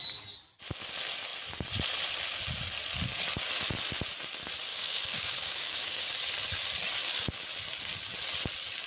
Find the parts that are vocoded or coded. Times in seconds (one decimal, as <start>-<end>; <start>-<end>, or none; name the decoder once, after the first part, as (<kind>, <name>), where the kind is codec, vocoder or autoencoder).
4.7-6.1 (codec, DAC)